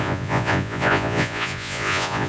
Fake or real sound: fake